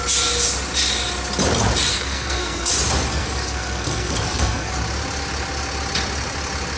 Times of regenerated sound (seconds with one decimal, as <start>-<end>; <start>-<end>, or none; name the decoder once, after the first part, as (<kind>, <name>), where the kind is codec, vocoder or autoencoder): 1.9-2.7 (codec, SNAC); 3.1-4.7